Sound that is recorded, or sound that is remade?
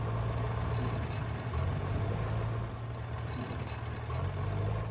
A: recorded